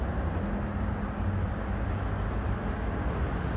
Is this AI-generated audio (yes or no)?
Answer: no